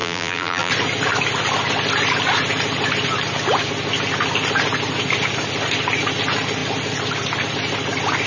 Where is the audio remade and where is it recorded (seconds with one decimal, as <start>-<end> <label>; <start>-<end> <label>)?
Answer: 0.0-0.7 remade; 0.7-8.3 recorded